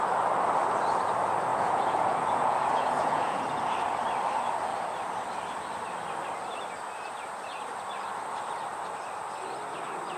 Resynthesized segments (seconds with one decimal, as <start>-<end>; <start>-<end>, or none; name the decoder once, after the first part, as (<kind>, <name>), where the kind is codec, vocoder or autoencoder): 1.5-3.5 (vocoder, Vocos)